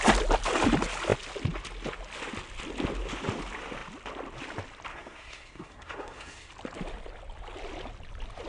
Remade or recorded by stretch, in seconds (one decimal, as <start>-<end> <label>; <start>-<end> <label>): 0.0-4.9 recorded; 4.9-6.5 remade; 6.5-8.5 recorded